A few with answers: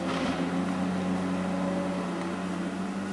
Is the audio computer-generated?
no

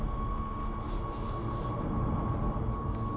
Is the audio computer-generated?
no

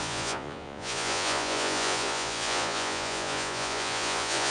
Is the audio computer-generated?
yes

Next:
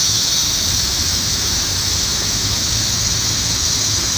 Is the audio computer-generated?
yes